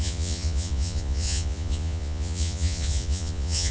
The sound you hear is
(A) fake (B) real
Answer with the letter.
A